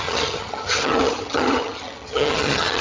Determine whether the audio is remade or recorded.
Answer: remade